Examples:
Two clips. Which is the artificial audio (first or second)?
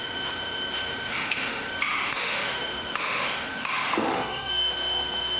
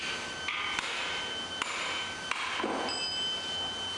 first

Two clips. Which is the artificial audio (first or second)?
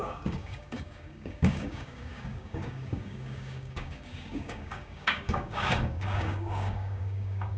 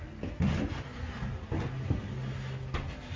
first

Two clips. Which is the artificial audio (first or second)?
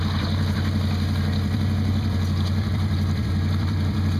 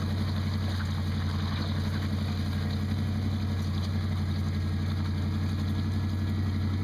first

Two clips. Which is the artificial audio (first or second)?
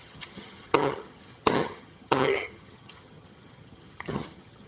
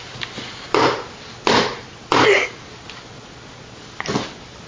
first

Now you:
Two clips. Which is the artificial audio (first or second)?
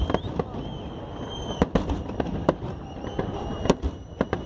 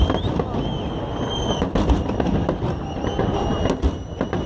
first